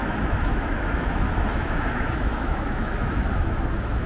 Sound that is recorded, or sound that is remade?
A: remade